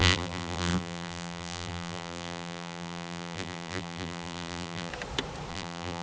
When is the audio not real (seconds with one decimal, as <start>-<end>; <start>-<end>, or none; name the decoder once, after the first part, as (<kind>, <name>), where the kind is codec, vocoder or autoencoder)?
0.0-4.9 (vocoder, BigVGAN v2); 5.5-6.0